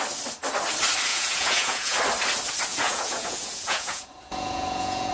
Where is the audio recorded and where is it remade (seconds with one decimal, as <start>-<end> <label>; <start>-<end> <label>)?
0.0-1.1 recorded; 1.1-2.0 remade; 2.0-2.7 recorded; 2.7-5.1 remade